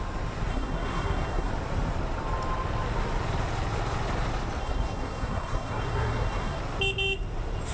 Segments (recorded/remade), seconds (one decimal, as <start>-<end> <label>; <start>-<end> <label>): 0.0-0.5 recorded; 0.5-1.5 remade; 1.5-4.6 recorded; 4.6-6.6 remade; 6.6-7.7 recorded